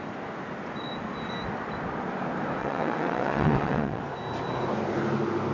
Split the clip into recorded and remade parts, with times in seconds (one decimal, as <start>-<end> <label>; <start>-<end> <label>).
0.0-2.6 recorded; 2.6-4.0 remade; 4.0-5.5 recorded